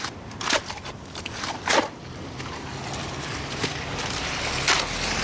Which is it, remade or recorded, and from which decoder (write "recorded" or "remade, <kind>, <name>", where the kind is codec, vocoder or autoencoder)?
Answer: recorded